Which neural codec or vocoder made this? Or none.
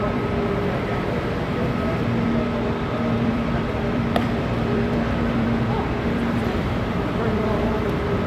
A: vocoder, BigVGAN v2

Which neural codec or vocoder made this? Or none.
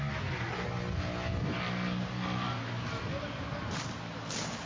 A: none